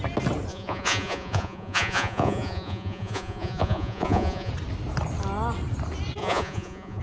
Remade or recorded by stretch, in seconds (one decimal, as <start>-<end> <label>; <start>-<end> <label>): 0.0-0.5 recorded; 0.5-4.5 remade; 4.5-6.2 recorded; 6.2-7.0 remade